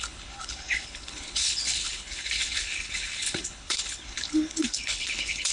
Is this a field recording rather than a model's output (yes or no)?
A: no